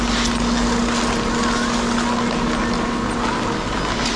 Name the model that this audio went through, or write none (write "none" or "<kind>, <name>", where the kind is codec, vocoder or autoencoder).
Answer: none